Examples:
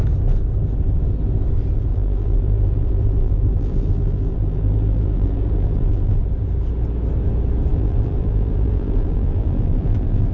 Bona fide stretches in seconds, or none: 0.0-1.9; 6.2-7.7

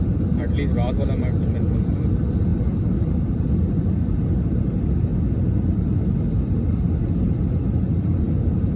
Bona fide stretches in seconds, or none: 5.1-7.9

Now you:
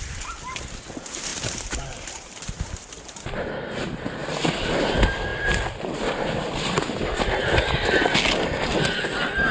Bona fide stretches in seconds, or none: 0.0-1.3; 2.9-4.2; 4.8-5.3; 6.8-9.5